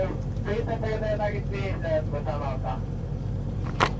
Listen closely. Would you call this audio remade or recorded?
remade